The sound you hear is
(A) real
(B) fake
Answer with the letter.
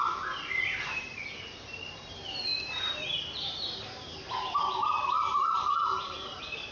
B